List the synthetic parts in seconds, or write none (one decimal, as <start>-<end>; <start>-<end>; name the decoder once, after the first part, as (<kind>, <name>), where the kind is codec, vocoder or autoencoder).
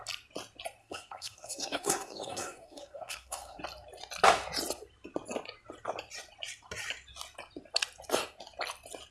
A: 0.8-3.6 (codec, SNAC)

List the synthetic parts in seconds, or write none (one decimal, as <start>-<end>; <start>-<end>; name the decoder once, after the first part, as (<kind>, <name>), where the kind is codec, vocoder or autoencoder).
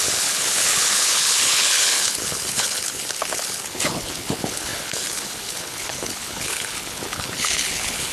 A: 0.0-8.1 (codec, HILCodec)